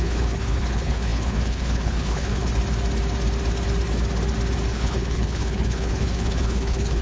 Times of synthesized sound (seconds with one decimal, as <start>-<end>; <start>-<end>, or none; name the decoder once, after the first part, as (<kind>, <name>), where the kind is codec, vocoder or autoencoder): 0.0-2.5 (codec, HILCodec); 4.7-7.0